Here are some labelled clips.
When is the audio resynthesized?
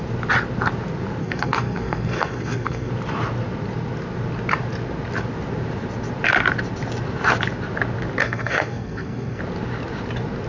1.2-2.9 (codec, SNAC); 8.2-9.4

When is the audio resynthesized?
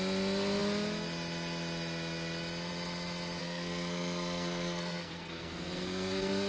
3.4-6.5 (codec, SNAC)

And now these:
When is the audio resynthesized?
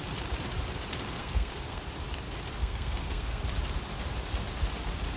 1.2-1.8 (codec, SNAC); 2.6-3.4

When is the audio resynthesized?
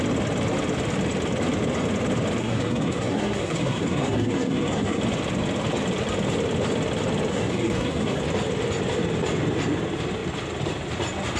2.4-5.0 (codec, SNAC); 7.3-8.2